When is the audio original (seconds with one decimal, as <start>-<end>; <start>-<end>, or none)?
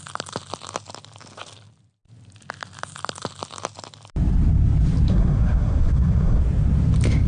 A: 0.0-5.1; 6.4-7.3